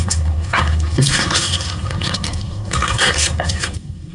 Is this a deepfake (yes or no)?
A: yes